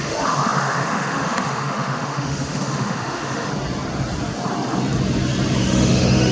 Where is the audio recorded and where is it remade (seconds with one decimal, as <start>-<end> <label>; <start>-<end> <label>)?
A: 0.0-3.5 remade; 3.5-5.6 recorded; 5.6-6.3 remade